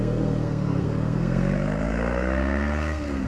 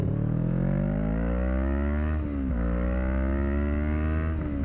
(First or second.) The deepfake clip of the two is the first